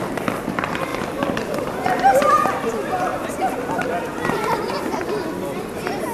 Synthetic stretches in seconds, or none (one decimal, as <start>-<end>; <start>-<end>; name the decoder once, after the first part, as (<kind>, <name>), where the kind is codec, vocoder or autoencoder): none